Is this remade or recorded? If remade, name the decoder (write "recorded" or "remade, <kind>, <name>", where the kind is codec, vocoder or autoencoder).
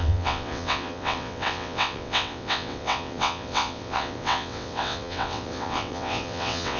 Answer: remade, vocoder, WaveNeXt